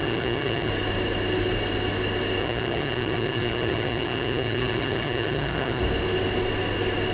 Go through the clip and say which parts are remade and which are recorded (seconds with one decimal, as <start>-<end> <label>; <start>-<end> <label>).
0.0-0.7 remade; 0.7-2.4 recorded; 2.4-5.8 remade; 5.8-7.1 recorded